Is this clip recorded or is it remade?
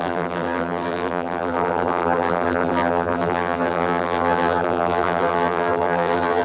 remade